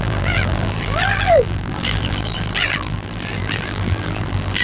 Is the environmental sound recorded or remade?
remade